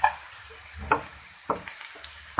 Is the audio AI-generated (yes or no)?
no